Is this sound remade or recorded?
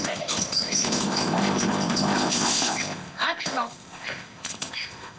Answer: remade